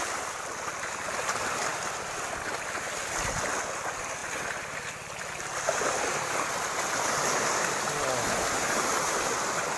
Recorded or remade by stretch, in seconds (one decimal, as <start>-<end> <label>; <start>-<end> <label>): 0.0-9.8 recorded